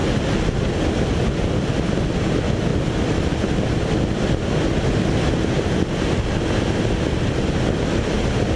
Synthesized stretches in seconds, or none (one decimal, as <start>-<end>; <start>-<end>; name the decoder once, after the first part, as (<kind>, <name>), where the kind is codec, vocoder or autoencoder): none